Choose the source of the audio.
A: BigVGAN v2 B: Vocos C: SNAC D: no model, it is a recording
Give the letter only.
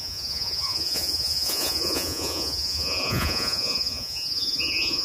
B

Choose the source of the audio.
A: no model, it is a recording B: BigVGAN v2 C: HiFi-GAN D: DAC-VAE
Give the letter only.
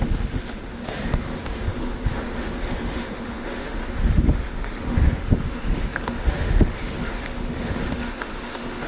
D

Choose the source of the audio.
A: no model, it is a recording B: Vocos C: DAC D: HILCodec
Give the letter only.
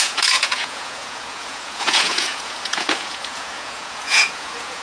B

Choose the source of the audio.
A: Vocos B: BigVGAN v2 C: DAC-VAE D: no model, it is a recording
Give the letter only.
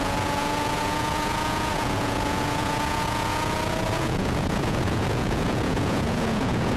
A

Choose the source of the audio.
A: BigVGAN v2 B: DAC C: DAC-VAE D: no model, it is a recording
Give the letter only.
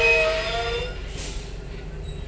D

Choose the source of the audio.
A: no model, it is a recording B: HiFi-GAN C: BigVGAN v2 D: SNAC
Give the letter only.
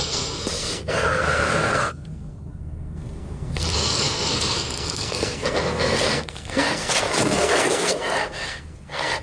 D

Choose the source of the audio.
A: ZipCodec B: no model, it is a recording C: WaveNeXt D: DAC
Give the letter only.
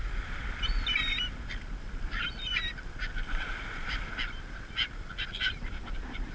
B